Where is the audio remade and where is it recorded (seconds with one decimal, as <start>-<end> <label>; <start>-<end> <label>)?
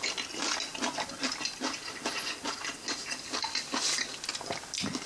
0.0-5.1 recorded